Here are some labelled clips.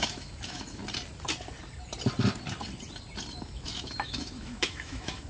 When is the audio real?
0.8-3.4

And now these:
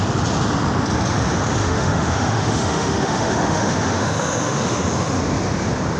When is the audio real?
0.0-1.6; 5.2-6.0

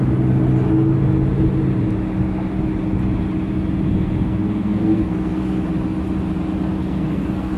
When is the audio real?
0.0-3.9; 5.7-6.8

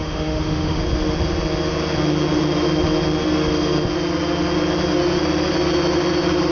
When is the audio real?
0.8-6.5

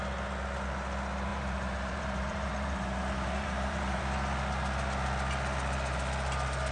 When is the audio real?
0.0-1.3; 4.0-6.7

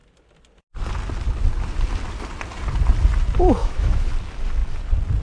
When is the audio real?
0.0-3.6; 4.1-5.2

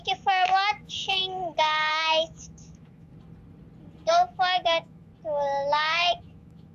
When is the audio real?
1.2-1.9; 3.1-4.1; 5.1-6.2